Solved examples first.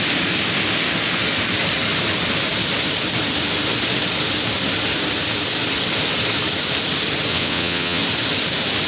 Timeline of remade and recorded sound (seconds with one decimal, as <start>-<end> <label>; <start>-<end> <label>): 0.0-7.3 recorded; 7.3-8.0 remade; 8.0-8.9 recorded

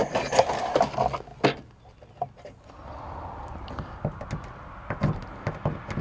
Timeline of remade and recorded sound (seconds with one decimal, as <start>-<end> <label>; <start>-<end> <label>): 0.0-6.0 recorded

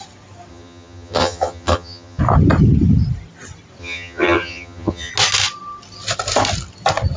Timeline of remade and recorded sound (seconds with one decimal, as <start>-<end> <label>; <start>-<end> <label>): 0.0-0.5 recorded; 0.5-2.2 remade; 2.2-3.8 recorded; 3.8-5.1 remade; 5.1-7.2 recorded